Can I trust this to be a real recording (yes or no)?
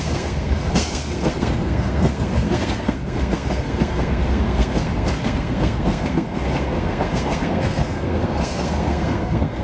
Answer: no